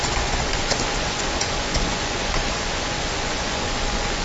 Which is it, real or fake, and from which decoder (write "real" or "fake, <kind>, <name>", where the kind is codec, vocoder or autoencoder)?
fake, vocoder, Vocos